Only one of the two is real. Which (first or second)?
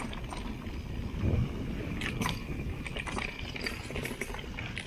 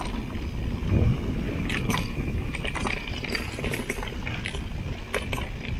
second